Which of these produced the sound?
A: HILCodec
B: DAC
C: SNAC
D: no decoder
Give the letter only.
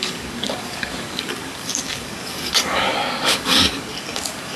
B